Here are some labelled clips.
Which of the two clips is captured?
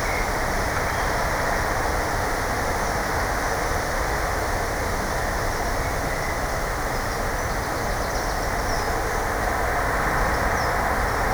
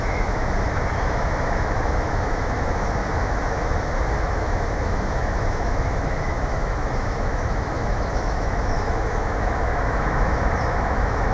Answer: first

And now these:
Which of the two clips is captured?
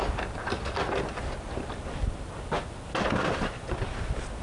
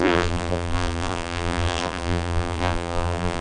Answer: first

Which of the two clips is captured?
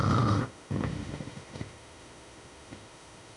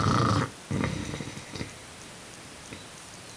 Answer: second